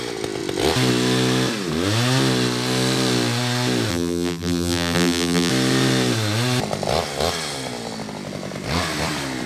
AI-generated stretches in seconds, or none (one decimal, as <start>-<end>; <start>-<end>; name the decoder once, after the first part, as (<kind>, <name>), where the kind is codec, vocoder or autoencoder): 3.9-5.5 (vocoder, BigVGAN v2)